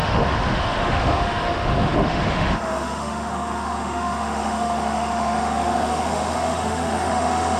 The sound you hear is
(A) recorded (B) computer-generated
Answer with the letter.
B